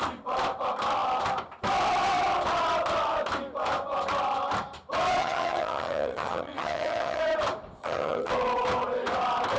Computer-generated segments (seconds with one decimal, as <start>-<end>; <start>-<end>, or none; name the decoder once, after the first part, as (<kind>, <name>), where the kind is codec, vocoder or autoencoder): 5.2-7.2 (vocoder, HiFi-GAN); 7.8-8.3